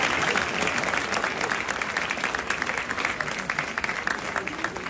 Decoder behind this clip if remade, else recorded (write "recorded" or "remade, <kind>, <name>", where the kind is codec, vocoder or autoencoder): recorded